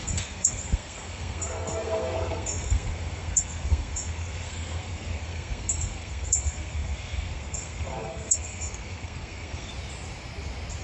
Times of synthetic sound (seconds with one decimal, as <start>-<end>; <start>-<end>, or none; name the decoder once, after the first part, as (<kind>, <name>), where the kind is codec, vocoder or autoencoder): 0.0-9.7 (codec, SNAC)